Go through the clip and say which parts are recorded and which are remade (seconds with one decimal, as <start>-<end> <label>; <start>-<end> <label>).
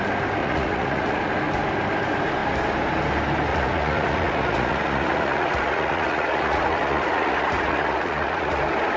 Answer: 0.0-0.4 recorded; 0.4-1.2 remade; 1.2-3.5 recorded; 3.5-8.6 remade; 8.6-9.0 recorded